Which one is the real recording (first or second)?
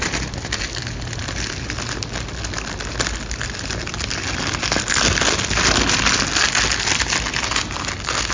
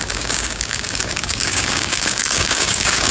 first